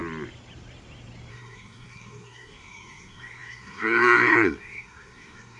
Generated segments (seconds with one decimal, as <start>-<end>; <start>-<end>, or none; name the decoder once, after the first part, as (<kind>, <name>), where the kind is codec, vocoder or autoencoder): 1.3-5.6 (codec, SNAC)